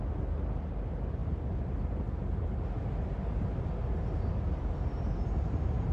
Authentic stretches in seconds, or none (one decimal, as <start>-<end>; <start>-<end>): 0.0-5.9